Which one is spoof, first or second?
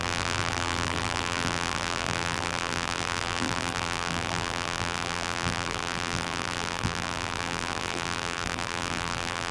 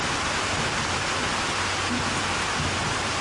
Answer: first